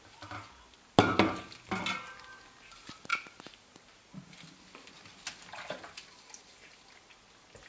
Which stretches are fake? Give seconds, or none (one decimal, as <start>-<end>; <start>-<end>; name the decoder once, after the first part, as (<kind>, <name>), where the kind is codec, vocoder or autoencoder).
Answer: none